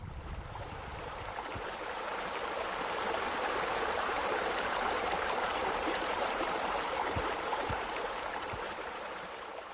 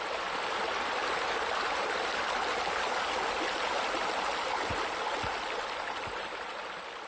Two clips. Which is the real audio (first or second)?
second